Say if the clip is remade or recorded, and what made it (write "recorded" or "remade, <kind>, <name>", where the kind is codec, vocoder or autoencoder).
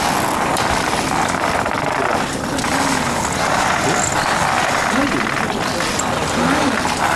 recorded